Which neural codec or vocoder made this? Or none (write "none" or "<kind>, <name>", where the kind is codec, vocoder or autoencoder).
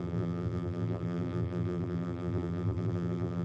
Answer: vocoder, BigVGAN v2